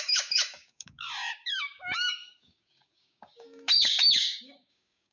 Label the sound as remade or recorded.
remade